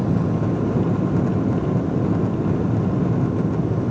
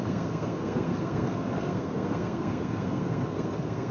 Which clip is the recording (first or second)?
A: first